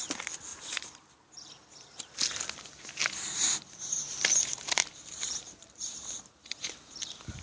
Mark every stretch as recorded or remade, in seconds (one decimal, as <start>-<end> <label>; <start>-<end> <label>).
0.0-0.5 recorded; 0.5-1.1 remade; 1.1-3.0 recorded; 3.0-7.4 remade